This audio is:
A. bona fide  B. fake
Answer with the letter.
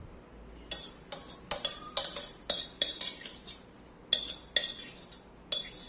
A